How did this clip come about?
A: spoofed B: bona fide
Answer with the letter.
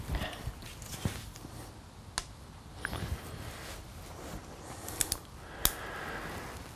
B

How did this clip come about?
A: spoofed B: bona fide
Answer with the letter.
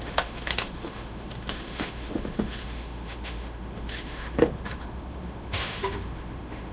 A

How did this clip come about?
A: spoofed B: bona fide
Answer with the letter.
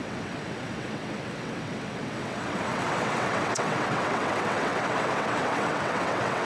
A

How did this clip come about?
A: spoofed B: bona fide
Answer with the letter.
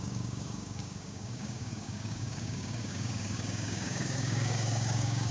A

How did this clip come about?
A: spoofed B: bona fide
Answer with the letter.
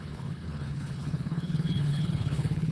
A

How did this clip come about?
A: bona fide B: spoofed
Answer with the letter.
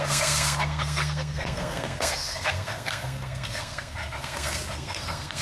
B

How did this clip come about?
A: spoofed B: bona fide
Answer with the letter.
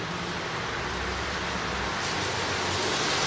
B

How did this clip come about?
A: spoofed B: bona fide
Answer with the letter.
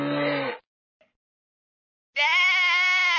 B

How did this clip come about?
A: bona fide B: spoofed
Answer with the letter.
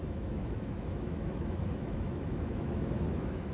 B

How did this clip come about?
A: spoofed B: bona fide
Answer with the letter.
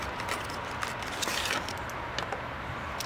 B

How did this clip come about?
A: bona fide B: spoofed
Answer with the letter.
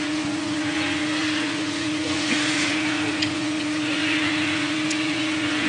B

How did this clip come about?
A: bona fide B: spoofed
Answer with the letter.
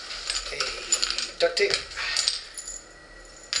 A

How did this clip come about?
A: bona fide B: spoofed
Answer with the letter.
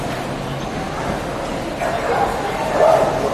A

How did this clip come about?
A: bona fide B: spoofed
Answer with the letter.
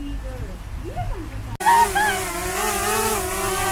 A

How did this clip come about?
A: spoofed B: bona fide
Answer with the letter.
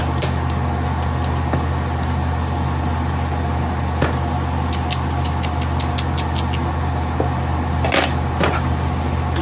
B